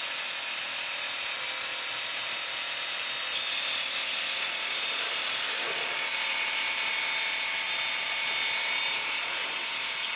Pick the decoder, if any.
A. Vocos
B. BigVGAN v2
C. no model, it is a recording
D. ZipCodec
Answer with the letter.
C